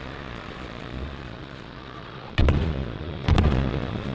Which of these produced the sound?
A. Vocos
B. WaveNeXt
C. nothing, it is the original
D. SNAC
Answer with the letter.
A